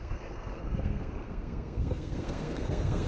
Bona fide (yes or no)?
no